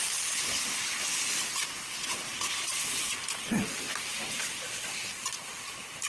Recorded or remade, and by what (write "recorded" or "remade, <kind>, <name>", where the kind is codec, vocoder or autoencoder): recorded